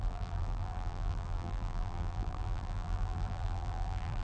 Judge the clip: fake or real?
fake